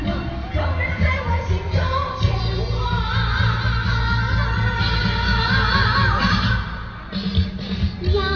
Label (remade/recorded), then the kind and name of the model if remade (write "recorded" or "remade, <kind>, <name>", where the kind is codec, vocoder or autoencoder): recorded